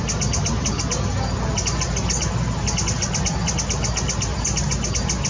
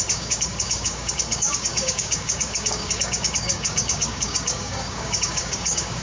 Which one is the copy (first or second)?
second